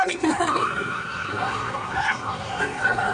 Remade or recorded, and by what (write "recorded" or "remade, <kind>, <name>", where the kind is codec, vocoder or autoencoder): remade, codec, SNAC